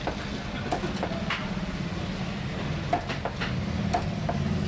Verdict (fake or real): real